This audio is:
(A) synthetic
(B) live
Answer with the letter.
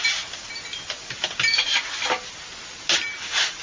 B